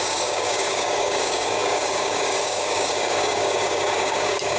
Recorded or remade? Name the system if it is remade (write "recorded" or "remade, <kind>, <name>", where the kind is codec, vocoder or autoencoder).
remade, codec, DAC